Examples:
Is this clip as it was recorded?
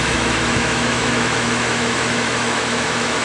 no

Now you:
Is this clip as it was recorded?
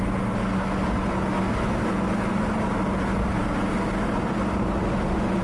yes